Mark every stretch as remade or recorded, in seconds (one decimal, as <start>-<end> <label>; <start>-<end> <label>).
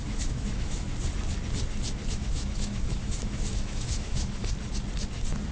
0.0-0.9 remade; 0.9-2.1 recorded; 2.1-4.4 remade; 4.4-5.5 recorded